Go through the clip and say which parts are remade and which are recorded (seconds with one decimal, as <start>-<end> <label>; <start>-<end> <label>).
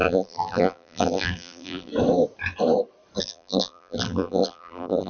0.0-1.9 remade; 1.9-3.2 recorded; 3.2-5.1 remade